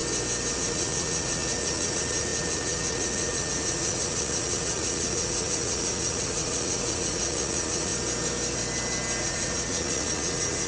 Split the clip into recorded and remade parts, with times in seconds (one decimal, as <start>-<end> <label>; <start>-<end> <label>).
0.0-0.5 recorded; 0.5-7.9 remade; 7.9-9.2 recorded; 9.2-10.7 remade